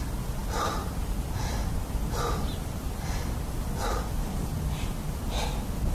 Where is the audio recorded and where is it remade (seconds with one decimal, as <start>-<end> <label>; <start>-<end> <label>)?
0.0-5.9 recorded